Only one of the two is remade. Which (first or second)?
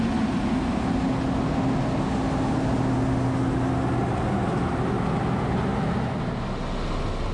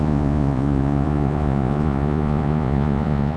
second